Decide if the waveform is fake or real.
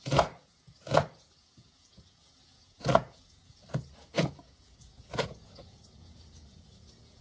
fake